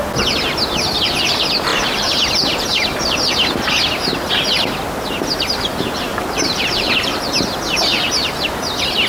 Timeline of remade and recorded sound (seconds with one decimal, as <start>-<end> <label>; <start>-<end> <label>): 0.0-1.7 recorded; 1.7-2.3 remade; 2.3-6.1 recorded; 6.1-7.1 remade; 7.1-7.9 recorded; 7.9-8.5 remade; 8.5-9.1 recorded

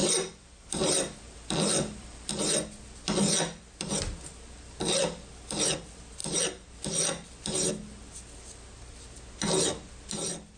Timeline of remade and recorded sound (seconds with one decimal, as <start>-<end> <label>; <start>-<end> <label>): 0.0-2.3 remade; 2.3-10.6 recorded